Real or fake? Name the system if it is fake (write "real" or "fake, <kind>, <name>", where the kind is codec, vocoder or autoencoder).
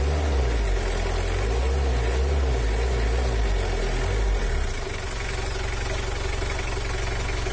real